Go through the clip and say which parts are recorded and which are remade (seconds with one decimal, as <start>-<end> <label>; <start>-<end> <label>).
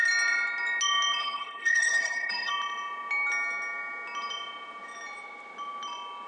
0.0-1.2 recorded; 1.2-2.5 remade; 2.5-6.3 recorded